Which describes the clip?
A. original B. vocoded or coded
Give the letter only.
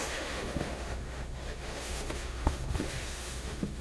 B